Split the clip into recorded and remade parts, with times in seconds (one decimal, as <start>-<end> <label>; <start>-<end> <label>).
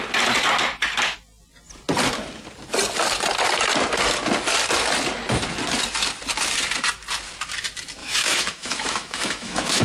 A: 0.0-8.0 recorded; 8.0-9.8 remade